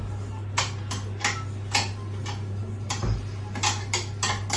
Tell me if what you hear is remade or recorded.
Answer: recorded